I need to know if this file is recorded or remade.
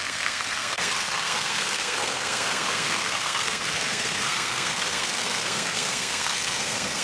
remade